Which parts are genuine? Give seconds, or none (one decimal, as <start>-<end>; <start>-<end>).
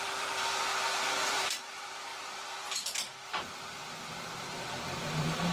0.7-1.3